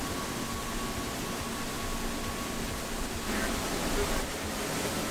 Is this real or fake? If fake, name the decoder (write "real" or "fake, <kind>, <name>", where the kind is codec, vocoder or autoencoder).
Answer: real